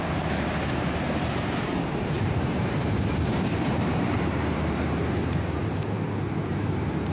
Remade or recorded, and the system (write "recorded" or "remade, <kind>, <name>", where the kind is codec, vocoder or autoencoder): remade, vocoder, BigVGAN v2